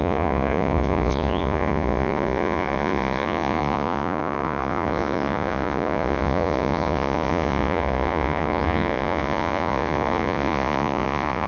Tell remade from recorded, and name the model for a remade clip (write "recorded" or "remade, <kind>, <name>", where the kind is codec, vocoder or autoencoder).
remade, vocoder, Vocos